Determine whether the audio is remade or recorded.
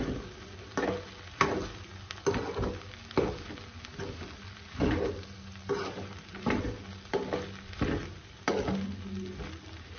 recorded